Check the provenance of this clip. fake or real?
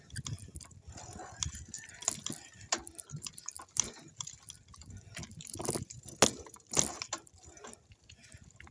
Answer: real